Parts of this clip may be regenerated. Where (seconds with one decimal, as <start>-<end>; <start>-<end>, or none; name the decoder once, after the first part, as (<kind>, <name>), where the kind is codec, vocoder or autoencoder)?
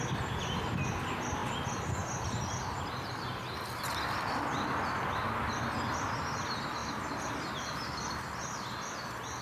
6.8-7.3 (vocoder, BigVGAN v2)